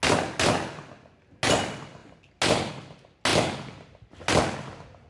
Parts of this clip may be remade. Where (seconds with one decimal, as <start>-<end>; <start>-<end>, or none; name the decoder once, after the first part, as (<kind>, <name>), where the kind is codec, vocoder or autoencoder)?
none